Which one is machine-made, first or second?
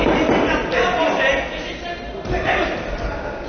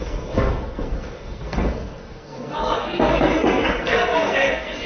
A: second